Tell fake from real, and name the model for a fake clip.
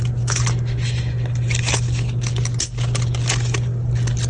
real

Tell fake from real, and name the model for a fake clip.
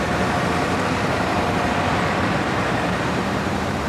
fake, vocoder, BigVGAN v2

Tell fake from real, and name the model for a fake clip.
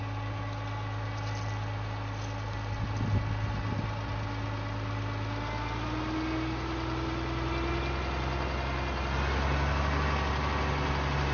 real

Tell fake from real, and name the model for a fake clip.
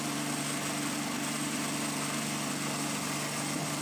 real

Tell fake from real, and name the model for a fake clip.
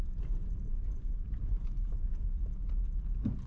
fake, vocoder, BigVGAN v2